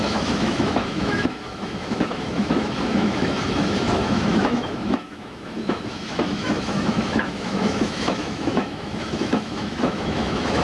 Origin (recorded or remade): remade